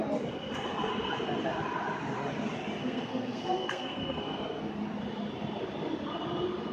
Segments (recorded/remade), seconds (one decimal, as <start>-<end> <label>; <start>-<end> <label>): 0.0-2.8 recorded; 2.8-4.7 remade; 4.7-6.7 recorded